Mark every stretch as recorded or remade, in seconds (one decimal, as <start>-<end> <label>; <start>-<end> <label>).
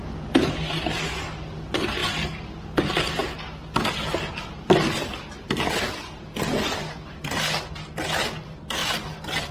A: 0.0-8.8 recorded; 8.8-9.5 remade